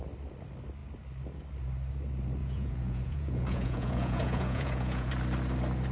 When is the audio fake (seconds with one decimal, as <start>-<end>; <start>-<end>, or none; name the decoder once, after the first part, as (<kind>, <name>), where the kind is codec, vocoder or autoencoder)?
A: 2.4-5.1 (vocoder, Vocos)